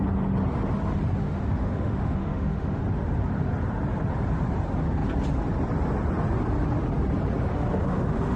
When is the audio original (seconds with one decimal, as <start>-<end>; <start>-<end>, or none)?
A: 0.0-1.2; 2.8-7.5